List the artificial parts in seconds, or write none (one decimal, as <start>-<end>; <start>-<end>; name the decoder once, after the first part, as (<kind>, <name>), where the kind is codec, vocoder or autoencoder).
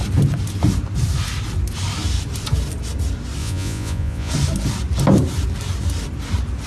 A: 3.4-4.3 (vocoder, Vocos)